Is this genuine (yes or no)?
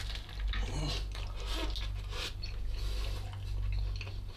yes